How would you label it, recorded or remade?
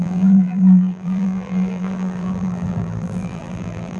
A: remade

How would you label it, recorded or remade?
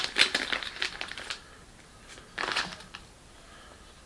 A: recorded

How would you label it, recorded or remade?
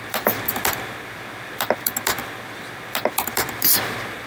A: remade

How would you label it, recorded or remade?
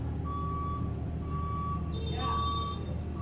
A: recorded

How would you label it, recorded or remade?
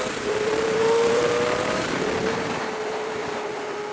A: remade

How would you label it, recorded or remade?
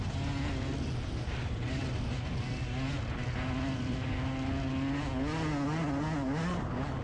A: recorded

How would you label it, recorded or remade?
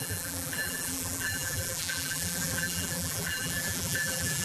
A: remade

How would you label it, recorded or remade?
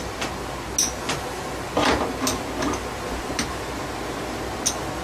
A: recorded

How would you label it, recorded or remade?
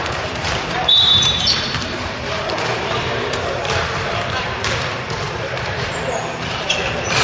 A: remade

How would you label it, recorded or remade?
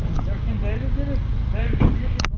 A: recorded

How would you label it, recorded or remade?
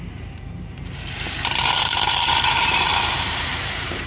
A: remade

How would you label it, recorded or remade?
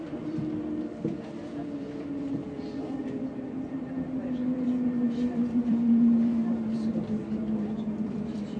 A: remade